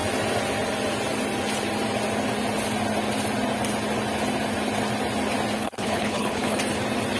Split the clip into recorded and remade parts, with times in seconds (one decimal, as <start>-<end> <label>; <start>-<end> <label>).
0.0-5.6 recorded; 5.6-6.6 remade; 6.6-7.2 recorded